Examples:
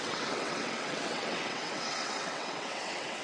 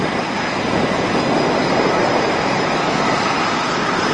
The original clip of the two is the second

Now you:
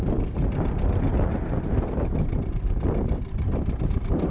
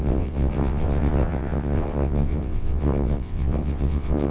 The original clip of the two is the first